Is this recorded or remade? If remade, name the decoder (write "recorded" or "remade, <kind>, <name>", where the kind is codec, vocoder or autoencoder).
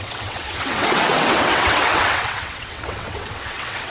remade, vocoder, WaveNeXt